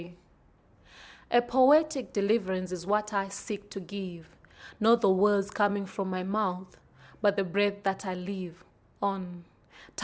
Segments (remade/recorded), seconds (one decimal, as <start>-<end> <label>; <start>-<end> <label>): 0.0-5.7 recorded; 5.7-6.7 remade; 6.7-10.0 recorded